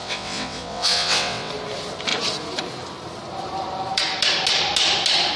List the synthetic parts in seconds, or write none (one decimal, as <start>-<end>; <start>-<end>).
0.0-1.5